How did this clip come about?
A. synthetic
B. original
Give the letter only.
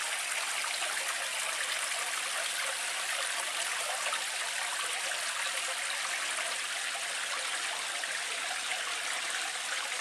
B